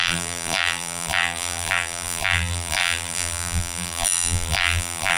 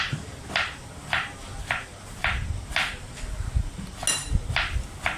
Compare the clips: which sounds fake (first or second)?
first